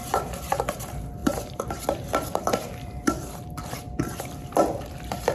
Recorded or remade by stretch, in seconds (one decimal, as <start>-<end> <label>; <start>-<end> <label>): 0.0-0.7 recorded; 0.7-5.3 remade